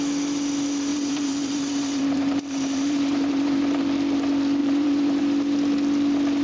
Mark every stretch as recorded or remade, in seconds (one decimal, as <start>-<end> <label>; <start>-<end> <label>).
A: 0.0-0.9 recorded; 0.9-3.8 remade; 3.8-4.6 recorded; 4.6-5.2 remade; 5.2-6.4 recorded